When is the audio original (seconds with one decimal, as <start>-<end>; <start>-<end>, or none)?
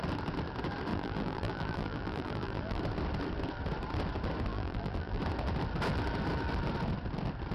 0.0-0.9; 2.8-4.5; 5.2-7.5